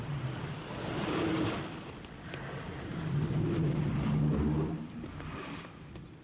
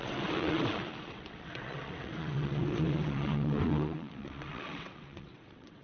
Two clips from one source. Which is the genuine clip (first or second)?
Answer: first